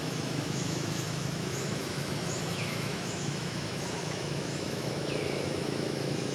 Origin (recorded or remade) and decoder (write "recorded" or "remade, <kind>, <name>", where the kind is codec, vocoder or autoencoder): remade, autoencoder, DAC-VAE